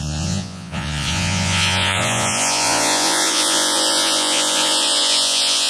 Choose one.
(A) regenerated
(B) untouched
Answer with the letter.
A